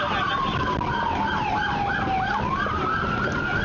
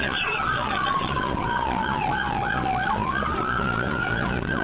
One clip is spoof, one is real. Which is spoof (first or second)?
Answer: second